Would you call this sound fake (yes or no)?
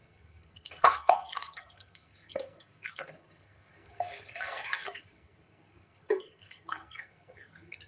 yes